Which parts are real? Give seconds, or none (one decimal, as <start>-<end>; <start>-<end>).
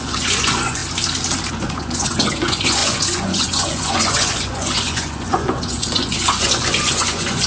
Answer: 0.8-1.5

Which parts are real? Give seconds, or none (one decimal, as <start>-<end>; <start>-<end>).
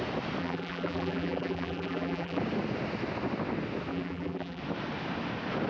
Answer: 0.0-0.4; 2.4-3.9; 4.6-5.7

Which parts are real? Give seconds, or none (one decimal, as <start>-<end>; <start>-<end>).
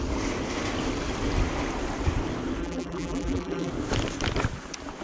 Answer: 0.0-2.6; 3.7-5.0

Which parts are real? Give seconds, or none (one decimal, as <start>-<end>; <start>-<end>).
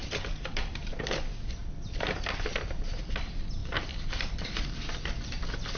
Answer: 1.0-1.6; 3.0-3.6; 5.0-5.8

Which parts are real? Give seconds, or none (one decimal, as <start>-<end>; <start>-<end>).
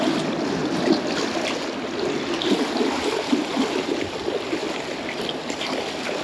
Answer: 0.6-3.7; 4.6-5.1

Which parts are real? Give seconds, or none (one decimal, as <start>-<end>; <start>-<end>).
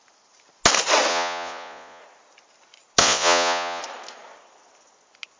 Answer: 0.0-1.1; 2.0-3.0; 3.8-5.4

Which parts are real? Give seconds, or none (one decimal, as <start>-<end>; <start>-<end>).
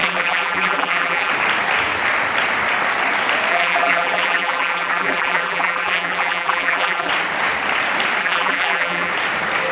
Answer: 1.3-3.5; 7.1-8.2; 9.1-9.7